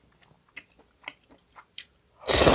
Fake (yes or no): no